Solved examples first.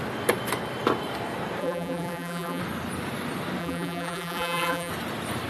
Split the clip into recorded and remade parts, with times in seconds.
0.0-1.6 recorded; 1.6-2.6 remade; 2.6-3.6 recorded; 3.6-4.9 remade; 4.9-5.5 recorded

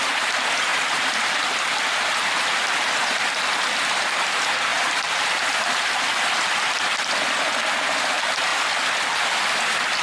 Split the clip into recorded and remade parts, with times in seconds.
0.0-4.7 recorded; 4.7-5.8 remade; 5.8-10.0 recorded

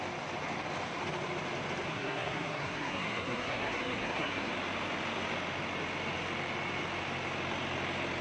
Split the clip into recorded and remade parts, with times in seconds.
0.0-1.9 recorded; 1.9-4.5 remade; 4.5-8.2 recorded

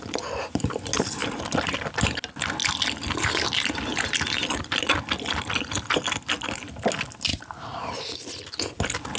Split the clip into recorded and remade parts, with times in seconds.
0.0-7.3 recorded; 7.3-8.0 remade; 8.0-9.2 recorded

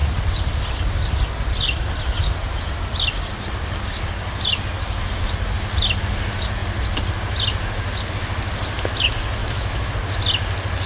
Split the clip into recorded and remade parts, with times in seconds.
0.0-9.4 recorded; 9.4-9.9 remade; 9.9-10.9 recorded

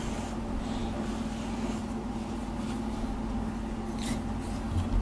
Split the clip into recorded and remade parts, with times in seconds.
0.0-5.0 recorded

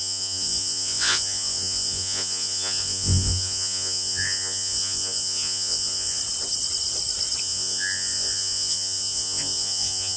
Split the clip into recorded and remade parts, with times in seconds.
0.0-6.2 remade; 6.2-7.4 recorded; 7.4-10.2 remade